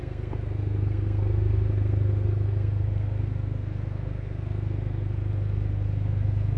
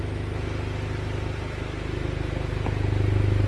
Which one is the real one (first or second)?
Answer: second